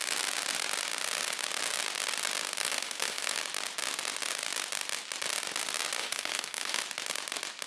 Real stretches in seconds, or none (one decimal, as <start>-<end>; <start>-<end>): 0.0-2.6; 3.4-6.0; 6.8-7.7